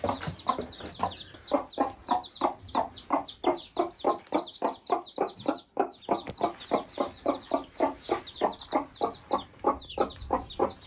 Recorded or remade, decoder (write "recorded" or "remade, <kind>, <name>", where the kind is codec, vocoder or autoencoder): remade, vocoder, BigVGAN v2